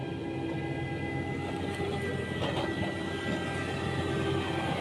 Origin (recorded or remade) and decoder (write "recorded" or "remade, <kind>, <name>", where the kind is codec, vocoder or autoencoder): recorded